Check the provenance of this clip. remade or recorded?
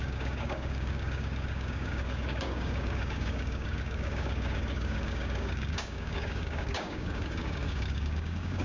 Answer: remade